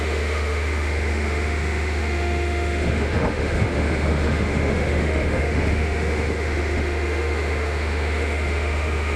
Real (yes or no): no